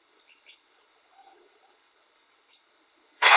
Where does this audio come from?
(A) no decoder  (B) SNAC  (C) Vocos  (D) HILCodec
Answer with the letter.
D